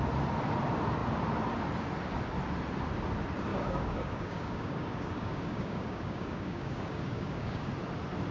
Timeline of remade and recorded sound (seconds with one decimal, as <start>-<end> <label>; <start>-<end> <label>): 0.0-3.5 recorded; 3.5-7.7 remade; 7.7-8.3 recorded